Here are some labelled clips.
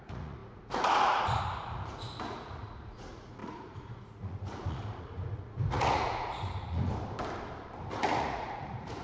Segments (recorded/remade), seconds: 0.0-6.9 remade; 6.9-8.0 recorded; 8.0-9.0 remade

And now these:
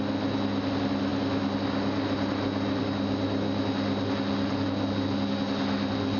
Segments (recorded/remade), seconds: 0.0-6.2 recorded

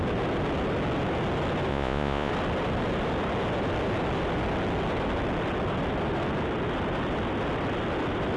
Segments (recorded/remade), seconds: 0.0-1.7 recorded; 1.7-2.3 remade; 2.3-8.4 recorded

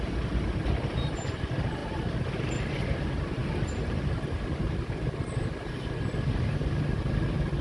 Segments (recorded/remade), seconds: 0.0-7.6 recorded

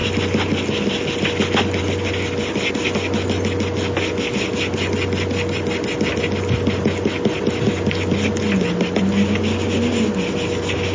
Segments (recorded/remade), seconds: 0.0-10.9 recorded

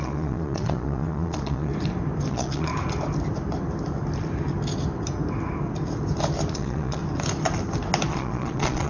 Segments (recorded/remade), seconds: 0.0-1.7 remade; 1.7-2.3 recorded; 2.3-2.7 remade; 2.7-6.5 recorded; 6.5-7.0 remade; 7.0-8.1 recorded; 8.1-8.9 remade